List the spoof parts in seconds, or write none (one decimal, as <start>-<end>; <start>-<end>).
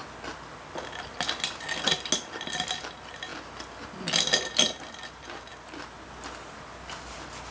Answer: none